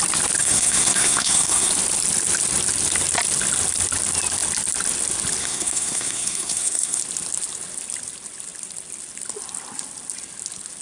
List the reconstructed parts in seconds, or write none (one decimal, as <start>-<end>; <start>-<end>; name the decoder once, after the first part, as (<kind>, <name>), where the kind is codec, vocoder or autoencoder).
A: 0.4-1.7 (codec, SNAC); 5.4-7.0